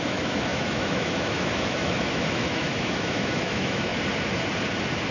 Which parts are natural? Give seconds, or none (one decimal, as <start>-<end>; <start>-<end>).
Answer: 3.9-5.1